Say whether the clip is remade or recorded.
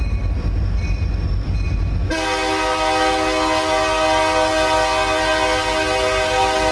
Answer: recorded